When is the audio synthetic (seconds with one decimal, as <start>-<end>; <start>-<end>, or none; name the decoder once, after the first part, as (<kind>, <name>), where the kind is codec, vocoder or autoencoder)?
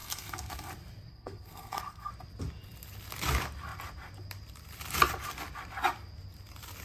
0.0-0.7 (codec, SNAC); 1.1-2.1